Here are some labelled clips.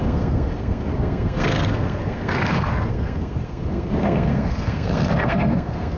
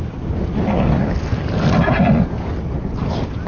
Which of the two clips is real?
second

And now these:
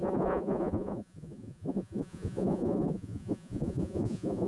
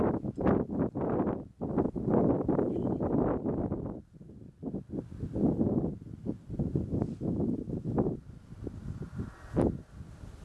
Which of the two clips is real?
second